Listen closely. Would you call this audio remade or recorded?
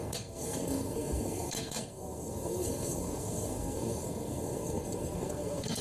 remade